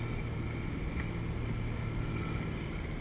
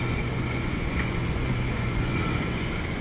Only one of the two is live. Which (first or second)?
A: first